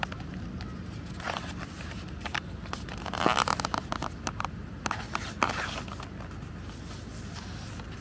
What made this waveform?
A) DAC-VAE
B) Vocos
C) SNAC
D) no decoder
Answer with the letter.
D